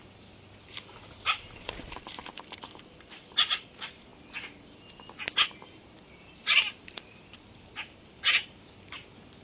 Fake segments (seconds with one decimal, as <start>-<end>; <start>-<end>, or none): 0.0-4.1; 5.5-9.4